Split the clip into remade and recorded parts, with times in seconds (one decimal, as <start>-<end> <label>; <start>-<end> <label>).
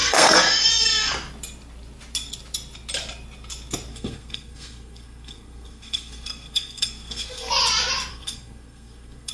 0.0-1.1 remade; 1.1-3.9 recorded; 3.9-7.5 remade; 7.5-8.1 recorded; 8.1-9.3 remade